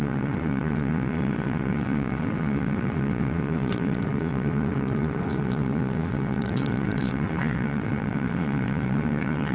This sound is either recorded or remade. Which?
remade